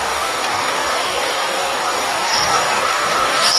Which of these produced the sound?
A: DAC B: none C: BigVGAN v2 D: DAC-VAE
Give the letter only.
A